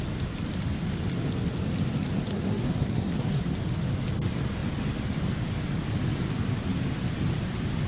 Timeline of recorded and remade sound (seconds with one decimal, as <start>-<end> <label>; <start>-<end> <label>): 0.0-2.3 recorded; 2.3-3.5 remade; 3.5-7.9 recorded